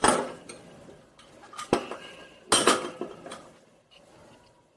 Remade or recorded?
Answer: recorded